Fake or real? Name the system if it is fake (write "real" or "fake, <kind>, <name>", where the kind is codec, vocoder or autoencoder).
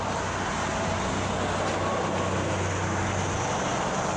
real